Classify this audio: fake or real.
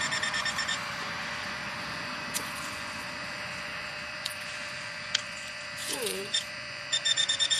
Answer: fake